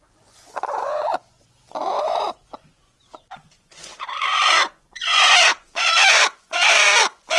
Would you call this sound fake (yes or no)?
yes